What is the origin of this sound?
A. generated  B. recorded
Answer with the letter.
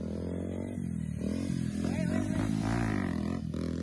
B